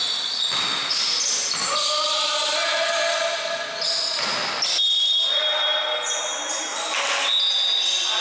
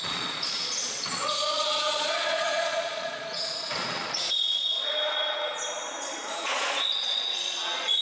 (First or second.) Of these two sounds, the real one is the first